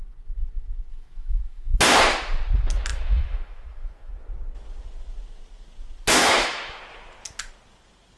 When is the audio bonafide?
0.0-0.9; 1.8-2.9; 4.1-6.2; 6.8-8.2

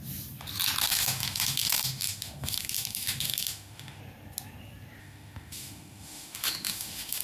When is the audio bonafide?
0.0-0.8; 4.0-5.0

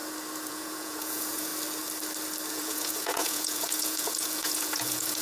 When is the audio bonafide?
0.0-0.5; 1.5-2.5

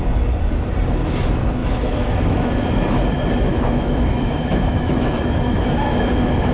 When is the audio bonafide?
0.0-1.6; 2.5-3.5; 6.1-6.5

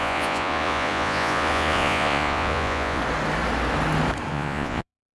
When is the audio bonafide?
3.0-4.3

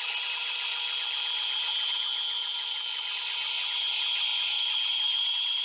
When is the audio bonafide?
0.0-5.6

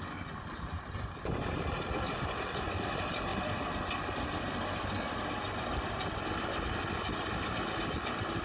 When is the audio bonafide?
0.0-8.4